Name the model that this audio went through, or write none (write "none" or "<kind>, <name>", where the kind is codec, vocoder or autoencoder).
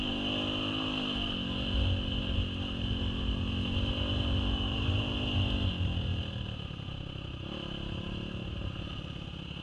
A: none